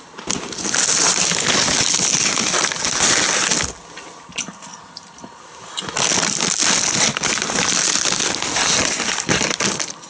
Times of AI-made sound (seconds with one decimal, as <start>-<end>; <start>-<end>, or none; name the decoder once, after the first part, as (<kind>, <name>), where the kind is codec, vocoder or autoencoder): 4.7-6.6 (vocoder, BigVGAN v2)